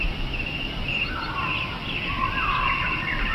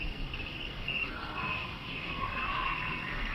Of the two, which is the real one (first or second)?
first